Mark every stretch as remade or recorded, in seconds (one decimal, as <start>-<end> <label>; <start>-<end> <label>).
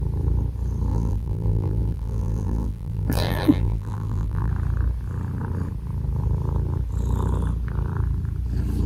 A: 0.0-0.9 recorded; 0.9-4.5 remade; 4.5-8.9 recorded